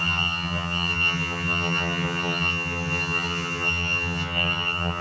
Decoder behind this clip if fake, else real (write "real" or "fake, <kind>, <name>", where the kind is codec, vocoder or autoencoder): fake, vocoder, HiFi-GAN